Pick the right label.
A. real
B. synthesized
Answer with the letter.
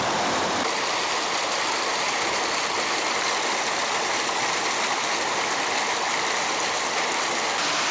A